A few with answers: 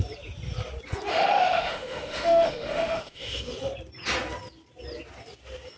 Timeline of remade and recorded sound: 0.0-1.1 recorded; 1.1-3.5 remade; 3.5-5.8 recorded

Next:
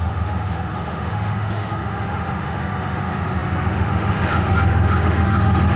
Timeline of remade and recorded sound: 0.0-5.8 remade

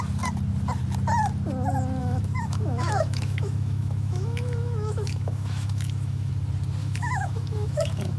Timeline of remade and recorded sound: 0.0-2.0 recorded; 2.0-6.3 remade; 6.3-6.8 recorded; 6.8-8.2 remade

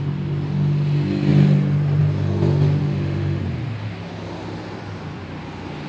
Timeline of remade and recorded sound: 0.0-2.8 recorded; 2.8-3.4 remade; 3.4-5.9 recorded